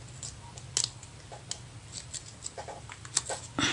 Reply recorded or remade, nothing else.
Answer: recorded